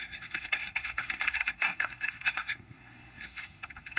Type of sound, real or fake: fake